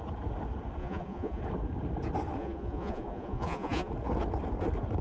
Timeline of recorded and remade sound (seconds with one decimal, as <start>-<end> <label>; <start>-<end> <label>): 0.0-0.8 recorded; 0.8-1.4 remade; 1.4-2.4 recorded; 2.4-3.9 remade; 3.9-5.0 recorded